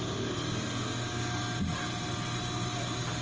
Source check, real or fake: real